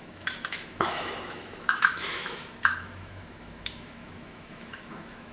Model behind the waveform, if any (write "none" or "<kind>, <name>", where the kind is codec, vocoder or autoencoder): autoencoder, DAC-VAE